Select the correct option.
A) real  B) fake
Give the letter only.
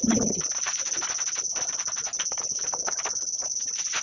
A